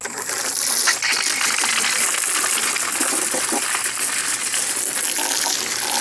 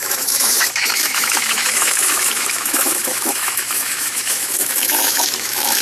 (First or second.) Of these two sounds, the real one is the first